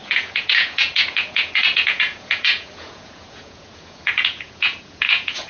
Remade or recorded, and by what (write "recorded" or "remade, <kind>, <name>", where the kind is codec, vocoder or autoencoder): remade, vocoder, Vocos